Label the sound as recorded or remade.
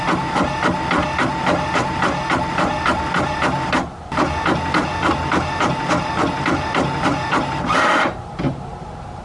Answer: recorded